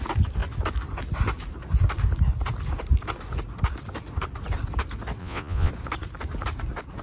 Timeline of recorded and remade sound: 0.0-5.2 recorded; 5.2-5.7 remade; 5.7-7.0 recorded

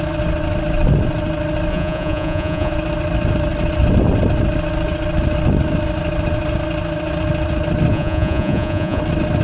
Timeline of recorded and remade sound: 0.0-1.7 recorded; 1.7-2.7 remade; 2.7-7.9 recorded; 7.9-9.0 remade; 9.0-9.4 recorded

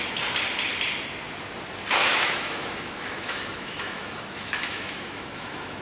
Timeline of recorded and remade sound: 0.0-2.0 recorded; 2.0-5.8 remade

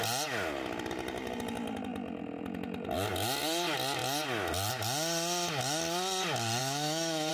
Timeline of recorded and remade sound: 0.0-6.6 recorded; 6.6-7.3 remade